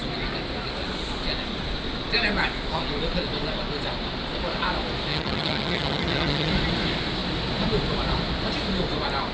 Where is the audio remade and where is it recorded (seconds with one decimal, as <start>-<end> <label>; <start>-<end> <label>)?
0.0-5.1 recorded; 5.1-6.5 remade; 6.5-9.3 recorded